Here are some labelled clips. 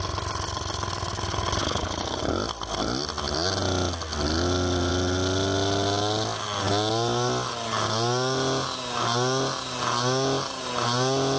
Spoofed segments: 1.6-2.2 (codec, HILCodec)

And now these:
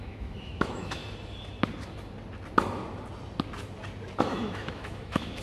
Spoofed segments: 0.0-1.0 (autoencoder, DAC-VAE); 4.2-5.4

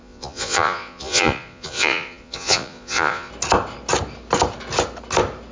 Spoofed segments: 0.0-3.3 (vocoder, Vocos)